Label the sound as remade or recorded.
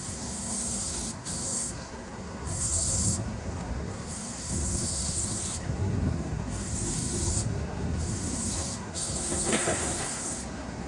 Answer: remade